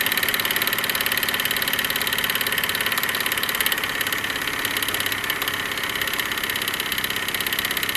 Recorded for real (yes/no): yes